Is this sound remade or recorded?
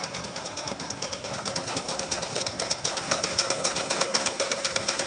remade